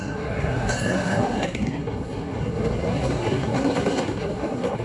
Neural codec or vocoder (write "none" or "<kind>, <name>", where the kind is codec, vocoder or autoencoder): codec, SNAC